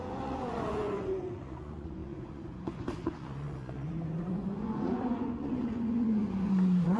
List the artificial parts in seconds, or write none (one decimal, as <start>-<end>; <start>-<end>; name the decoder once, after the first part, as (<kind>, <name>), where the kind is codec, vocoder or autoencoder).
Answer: 0.0-7.0 (vocoder, Vocos)